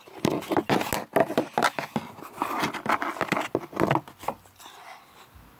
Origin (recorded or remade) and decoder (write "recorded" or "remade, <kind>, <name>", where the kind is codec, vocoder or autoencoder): recorded